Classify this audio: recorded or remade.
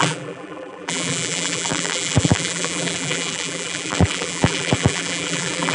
remade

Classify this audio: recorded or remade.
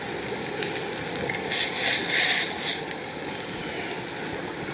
recorded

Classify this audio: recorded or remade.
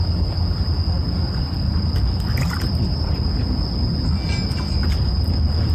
recorded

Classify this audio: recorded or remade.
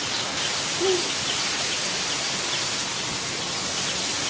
recorded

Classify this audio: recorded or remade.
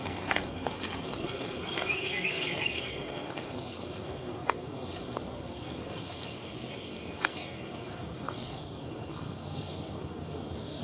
remade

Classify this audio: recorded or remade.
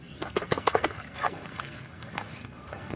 remade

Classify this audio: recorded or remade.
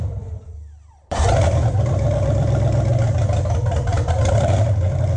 remade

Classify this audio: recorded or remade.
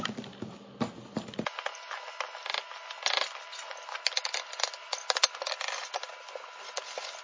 recorded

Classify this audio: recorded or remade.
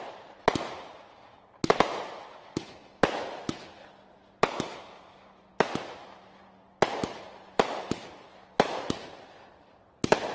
recorded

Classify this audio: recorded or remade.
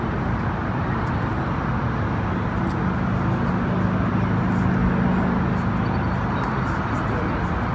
recorded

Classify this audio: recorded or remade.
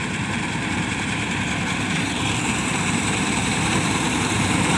remade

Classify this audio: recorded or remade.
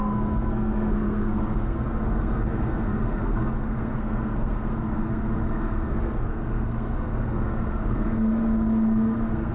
remade